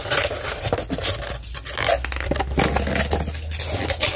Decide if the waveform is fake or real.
real